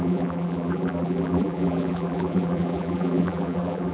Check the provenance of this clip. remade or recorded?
remade